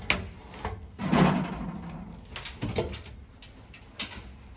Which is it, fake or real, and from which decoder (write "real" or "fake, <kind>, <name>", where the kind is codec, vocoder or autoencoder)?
real